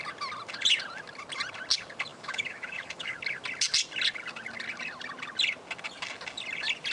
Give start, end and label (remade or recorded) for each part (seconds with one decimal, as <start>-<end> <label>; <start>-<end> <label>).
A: 0.0-2.1 recorded; 2.1-3.2 remade; 3.2-6.9 recorded

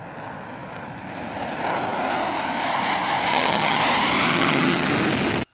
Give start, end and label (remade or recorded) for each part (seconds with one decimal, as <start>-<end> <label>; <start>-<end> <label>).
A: 0.0-3.3 recorded; 3.3-3.8 remade; 3.8-4.3 recorded; 4.3-4.9 remade; 4.9-5.5 recorded

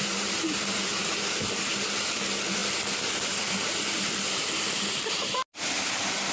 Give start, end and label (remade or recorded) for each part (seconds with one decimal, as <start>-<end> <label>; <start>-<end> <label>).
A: 0.0-2.6 recorded; 2.6-4.4 remade; 4.4-6.3 recorded

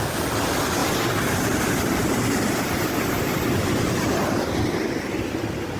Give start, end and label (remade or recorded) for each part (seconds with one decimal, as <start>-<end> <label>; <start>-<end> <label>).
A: 0.0-5.8 recorded

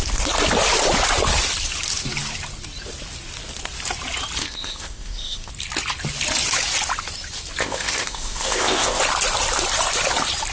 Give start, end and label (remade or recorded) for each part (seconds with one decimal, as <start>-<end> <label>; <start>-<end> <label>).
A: 0.0-4.4 recorded; 4.4-5.5 remade; 5.5-7.6 recorded; 7.6-9.0 remade; 9.0-10.5 recorded

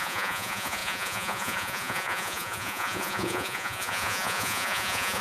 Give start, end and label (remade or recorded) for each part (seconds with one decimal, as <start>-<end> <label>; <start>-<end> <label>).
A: 0.0-5.2 remade

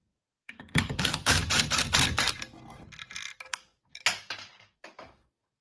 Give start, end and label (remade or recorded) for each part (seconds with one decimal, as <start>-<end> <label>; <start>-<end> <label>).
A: 0.0-1.4 remade; 1.4-3.5 recorded; 3.5-5.6 remade

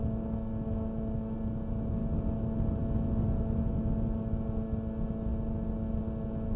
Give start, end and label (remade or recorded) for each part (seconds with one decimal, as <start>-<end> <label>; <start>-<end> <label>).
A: 0.0-6.6 recorded